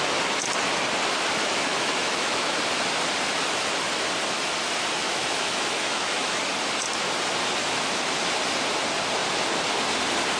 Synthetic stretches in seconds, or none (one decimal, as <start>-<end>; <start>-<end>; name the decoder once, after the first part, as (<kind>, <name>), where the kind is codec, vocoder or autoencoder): 1.4-2.6 (autoencoder, DAC-VAE); 5.0-6.4; 7.6-8.2